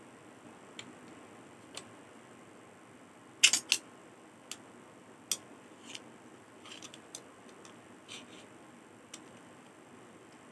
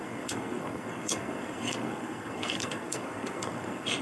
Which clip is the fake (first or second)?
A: second